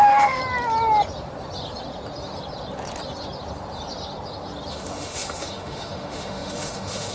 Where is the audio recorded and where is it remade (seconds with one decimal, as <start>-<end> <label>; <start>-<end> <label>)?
0.0-0.4 remade; 0.4-4.7 recorded; 4.7-7.1 remade